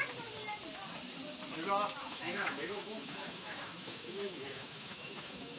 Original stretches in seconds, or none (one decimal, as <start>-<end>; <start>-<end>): 0.0-2.0